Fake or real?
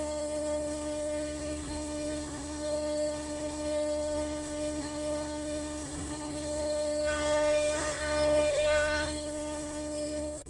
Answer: fake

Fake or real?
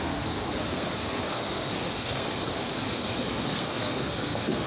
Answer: fake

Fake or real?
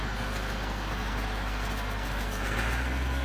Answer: fake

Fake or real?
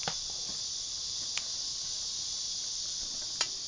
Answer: real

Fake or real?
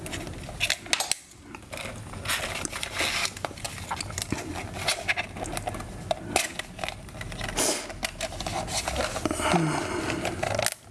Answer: real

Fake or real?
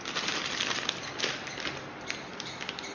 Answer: real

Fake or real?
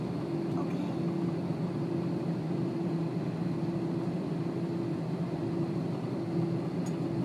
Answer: real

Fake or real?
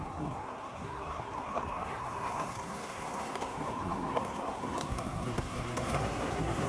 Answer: fake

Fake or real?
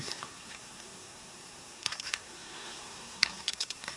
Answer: fake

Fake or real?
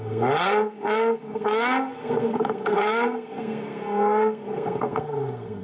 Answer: fake